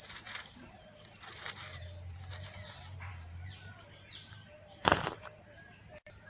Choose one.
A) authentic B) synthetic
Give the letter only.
B